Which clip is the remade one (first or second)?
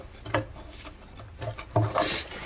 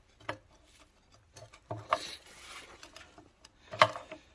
second